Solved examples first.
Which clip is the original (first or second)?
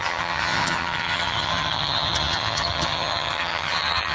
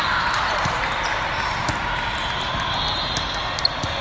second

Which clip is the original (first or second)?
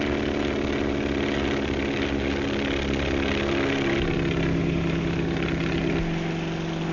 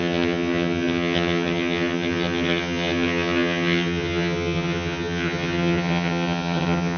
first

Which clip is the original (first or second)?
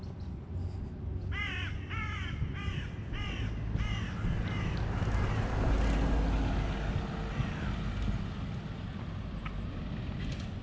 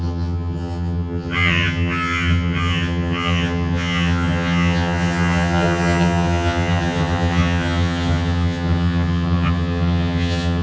first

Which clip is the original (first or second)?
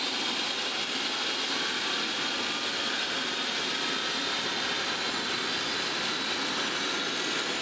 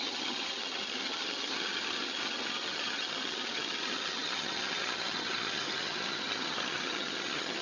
first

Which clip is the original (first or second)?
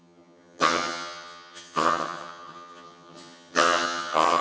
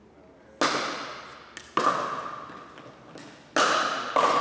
second